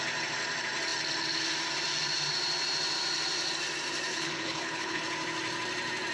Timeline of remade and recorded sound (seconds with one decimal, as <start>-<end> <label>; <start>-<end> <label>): 0.0-4.1 recorded; 4.1-5.0 remade; 5.0-6.1 recorded

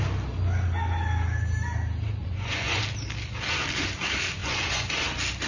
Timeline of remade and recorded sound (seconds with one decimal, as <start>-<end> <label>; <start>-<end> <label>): 0.0-2.2 recorded; 2.2-2.8 remade; 2.8-4.4 recorded; 4.4-4.9 remade; 4.9-5.5 recorded